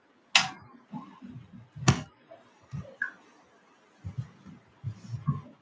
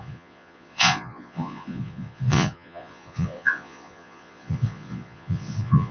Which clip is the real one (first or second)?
first